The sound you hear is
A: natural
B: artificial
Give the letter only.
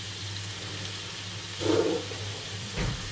B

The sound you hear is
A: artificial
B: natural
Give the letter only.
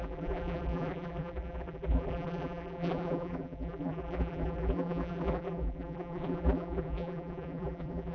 A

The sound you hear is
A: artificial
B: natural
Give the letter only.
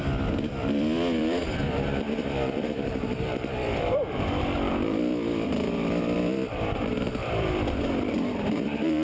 A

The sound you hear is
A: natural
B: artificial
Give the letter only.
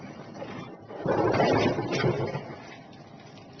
B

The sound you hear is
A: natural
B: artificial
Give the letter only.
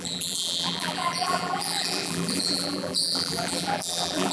B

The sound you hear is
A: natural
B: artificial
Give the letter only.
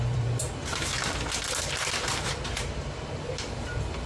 B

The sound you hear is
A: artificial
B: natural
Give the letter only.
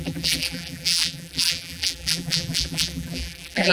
A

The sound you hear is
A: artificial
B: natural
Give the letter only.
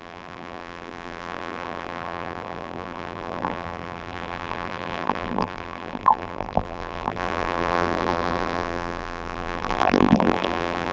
A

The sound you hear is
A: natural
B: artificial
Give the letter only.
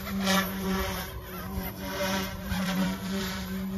B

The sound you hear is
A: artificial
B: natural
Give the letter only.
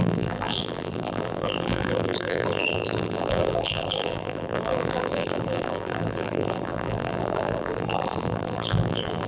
A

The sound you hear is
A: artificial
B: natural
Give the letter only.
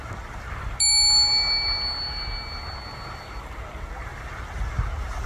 B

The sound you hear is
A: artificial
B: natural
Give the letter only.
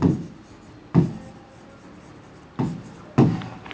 B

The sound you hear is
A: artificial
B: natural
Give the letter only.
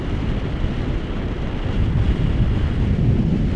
A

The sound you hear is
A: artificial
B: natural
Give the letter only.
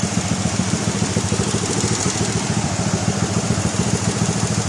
A